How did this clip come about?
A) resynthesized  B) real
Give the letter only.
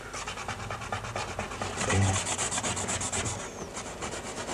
B